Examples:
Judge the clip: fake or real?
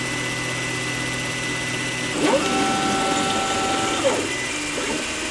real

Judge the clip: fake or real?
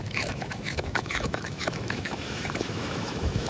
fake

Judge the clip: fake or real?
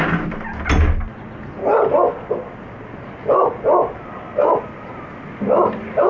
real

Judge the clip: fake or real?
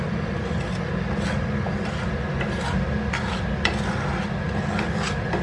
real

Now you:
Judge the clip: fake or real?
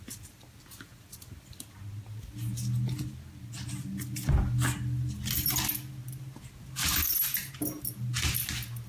real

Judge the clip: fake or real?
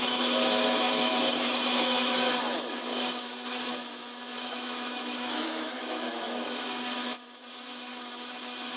fake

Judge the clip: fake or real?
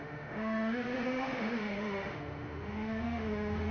fake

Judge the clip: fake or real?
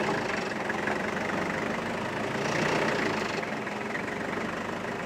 real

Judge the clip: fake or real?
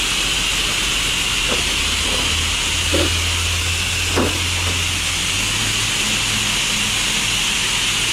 real